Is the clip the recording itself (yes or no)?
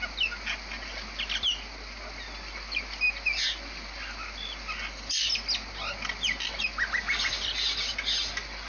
yes